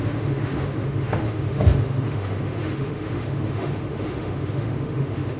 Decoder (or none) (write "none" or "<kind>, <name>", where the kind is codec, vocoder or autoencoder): autoencoder, DAC-VAE